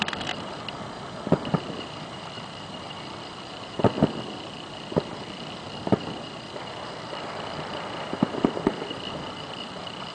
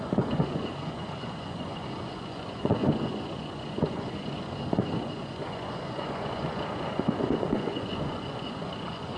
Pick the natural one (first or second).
first